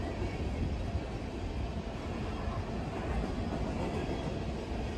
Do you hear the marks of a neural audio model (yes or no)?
no